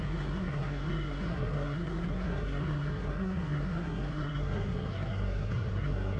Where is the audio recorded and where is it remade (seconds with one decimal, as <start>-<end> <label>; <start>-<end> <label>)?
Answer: 0.0-6.2 remade